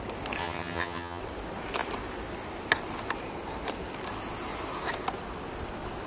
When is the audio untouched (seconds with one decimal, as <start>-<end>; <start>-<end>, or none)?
0.0-0.4; 1.2-6.1